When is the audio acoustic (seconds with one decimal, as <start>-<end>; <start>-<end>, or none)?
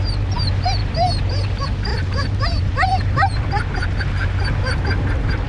0.0-1.9; 4.0-5.5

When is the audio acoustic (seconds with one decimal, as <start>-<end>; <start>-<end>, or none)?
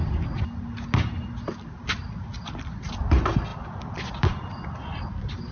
0.0-3.1